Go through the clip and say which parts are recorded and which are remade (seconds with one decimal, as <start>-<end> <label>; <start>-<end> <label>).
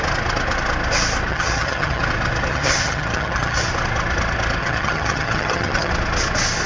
0.0-1.3 recorded; 1.3-2.0 remade; 2.0-2.5 recorded; 2.5-3.7 remade; 3.7-4.6 recorded; 4.6-5.9 remade; 5.9-6.7 recorded